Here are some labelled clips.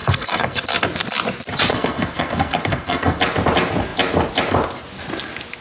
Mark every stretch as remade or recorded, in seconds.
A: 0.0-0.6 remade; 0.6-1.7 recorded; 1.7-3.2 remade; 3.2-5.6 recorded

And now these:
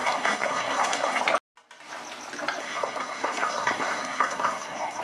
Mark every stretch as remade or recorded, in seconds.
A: 0.0-1.2 remade; 1.2-2.6 recorded; 2.6-5.0 remade

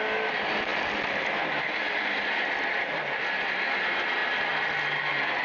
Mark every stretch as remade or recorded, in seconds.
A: 0.0-5.4 recorded